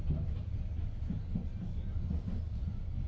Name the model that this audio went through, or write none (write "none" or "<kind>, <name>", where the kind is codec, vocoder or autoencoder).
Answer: none